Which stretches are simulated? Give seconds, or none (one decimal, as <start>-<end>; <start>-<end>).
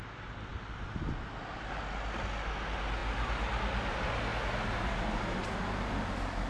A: none